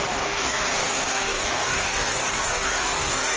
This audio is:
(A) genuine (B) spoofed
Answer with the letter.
B